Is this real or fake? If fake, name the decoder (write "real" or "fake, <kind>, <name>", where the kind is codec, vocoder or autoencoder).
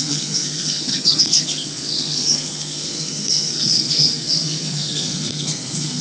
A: fake, codec, SNAC